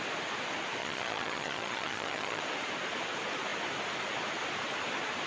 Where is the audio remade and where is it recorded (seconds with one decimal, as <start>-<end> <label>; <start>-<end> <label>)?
0.0-0.8 recorded; 0.8-2.4 remade; 2.4-5.3 recorded